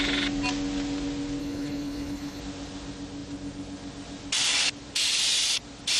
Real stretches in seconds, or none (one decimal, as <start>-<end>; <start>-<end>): 0.0-1.4; 2.4-6.0